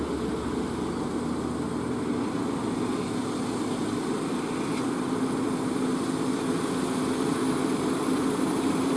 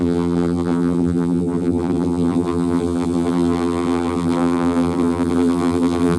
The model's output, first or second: second